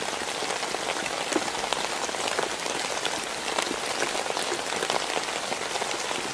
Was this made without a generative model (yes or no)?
yes